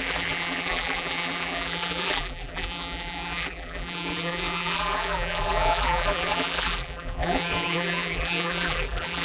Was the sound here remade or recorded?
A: remade